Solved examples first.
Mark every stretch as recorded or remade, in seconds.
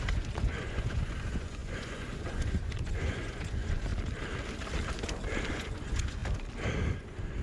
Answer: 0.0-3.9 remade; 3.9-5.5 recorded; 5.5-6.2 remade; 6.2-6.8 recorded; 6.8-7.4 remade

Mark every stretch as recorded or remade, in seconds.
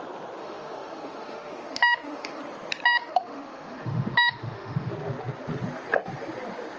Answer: 0.0-0.4 recorded; 0.4-2.4 remade; 2.4-3.0 recorded; 3.0-4.9 remade; 4.9-6.8 recorded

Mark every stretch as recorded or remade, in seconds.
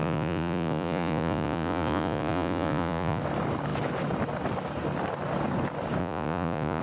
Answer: 0.0-3.2 remade; 3.2-6.0 recorded; 6.0-6.8 remade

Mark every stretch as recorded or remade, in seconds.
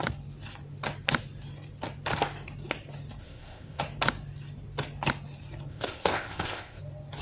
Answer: 0.0-3.2 recorded; 3.2-3.8 remade; 3.8-5.7 recorded; 5.7-6.8 remade; 6.8-7.2 recorded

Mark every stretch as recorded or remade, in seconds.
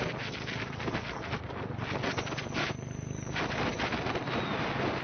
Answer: 0.0-5.0 recorded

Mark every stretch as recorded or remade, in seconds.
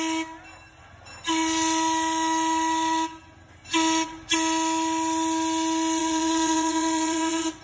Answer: 0.0-6.0 recorded; 6.0-7.6 remade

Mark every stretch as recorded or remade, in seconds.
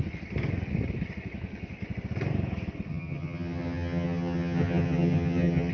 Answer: 0.0-2.9 recorded; 2.9-5.7 remade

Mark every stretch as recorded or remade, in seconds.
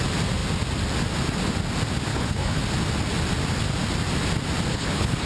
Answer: 0.0-2.1 recorded; 2.1-2.6 remade; 2.6-4.7 recorded; 4.7-5.3 remade